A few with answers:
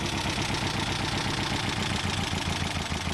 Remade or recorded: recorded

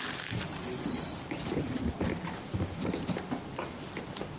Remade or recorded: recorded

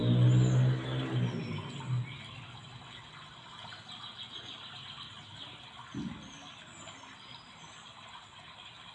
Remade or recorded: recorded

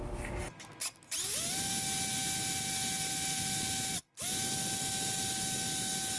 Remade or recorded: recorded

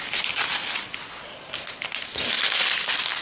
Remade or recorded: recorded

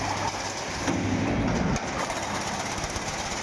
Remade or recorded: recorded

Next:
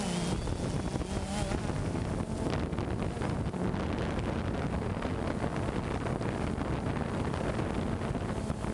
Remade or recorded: recorded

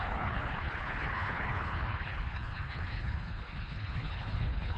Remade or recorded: remade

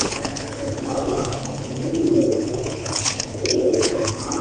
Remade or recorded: remade